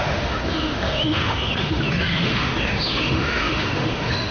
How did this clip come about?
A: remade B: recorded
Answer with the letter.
A